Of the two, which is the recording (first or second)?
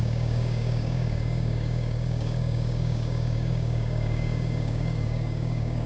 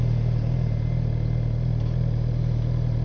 second